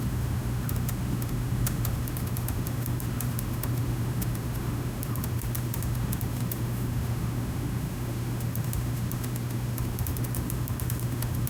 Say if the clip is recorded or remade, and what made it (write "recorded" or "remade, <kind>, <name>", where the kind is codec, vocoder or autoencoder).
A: remade, autoencoder, DAC-VAE